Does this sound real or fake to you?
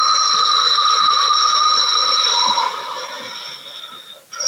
real